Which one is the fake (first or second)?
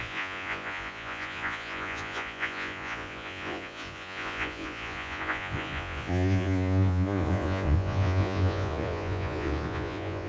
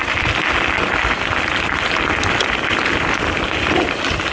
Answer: first